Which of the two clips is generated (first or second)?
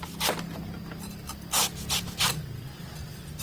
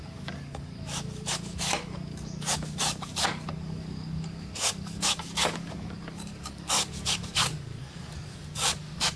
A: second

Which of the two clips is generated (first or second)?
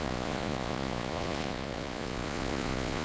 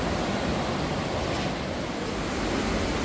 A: first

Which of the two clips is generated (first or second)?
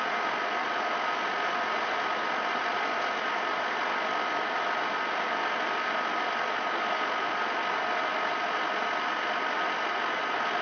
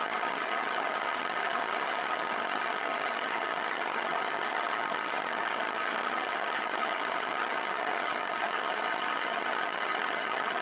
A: second